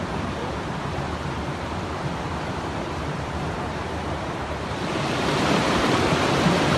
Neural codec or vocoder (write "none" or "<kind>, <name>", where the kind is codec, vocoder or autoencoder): vocoder, BigVGAN v2